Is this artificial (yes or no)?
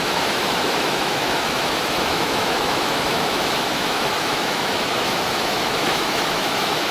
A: yes